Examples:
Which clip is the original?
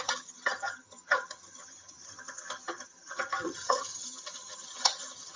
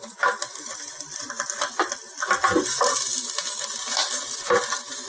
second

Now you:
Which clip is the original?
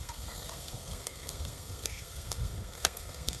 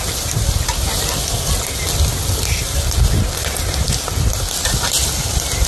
second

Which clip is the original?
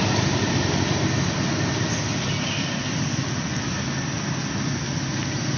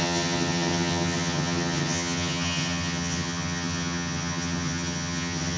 first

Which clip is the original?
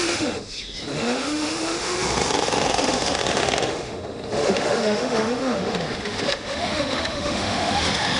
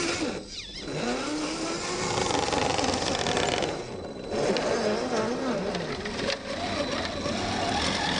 second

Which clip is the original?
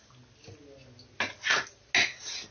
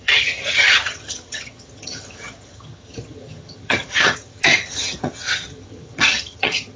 first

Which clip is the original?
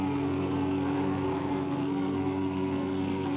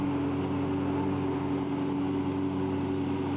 second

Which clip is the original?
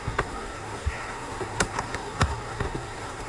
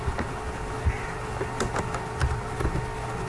second